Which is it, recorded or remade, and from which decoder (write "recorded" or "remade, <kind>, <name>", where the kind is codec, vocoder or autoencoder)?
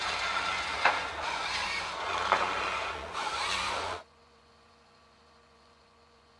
remade, vocoder, Vocos